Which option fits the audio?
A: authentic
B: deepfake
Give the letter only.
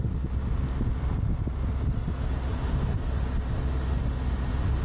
A